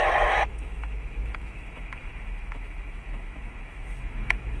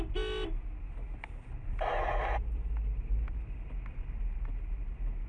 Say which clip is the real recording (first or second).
second